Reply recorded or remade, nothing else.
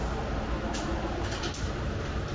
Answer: recorded